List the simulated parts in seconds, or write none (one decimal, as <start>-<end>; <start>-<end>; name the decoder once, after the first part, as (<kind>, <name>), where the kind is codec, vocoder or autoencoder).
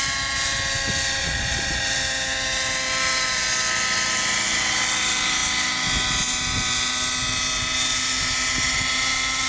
1.2-1.8 (vocoder, Vocos)